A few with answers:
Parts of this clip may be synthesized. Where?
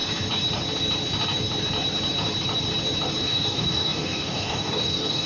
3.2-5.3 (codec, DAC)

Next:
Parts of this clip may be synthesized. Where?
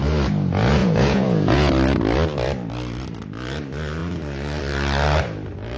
0.8-1.7 (vocoder, Vocos)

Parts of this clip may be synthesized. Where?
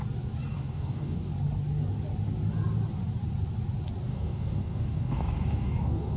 0.6-1.3 (codec, DAC); 4.1-6.2